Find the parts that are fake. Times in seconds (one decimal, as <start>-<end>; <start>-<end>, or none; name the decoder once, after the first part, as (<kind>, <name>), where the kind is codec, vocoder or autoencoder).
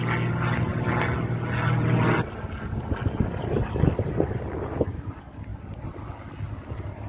none